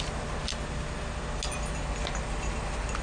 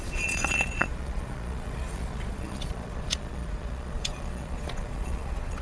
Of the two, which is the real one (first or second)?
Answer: first